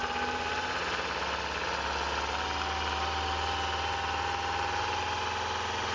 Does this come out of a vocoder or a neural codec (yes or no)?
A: no